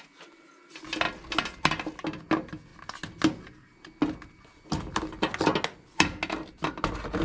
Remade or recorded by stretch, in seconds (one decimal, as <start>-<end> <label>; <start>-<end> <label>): 0.0-7.2 recorded